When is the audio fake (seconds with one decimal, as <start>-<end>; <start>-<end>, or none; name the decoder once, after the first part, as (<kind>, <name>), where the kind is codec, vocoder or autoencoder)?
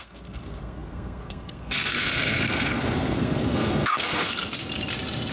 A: 0.0-4.4 (codec, SNAC)